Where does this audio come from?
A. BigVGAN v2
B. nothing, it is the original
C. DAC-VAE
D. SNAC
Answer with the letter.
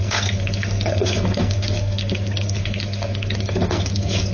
D